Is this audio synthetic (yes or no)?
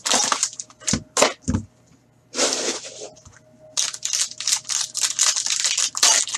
no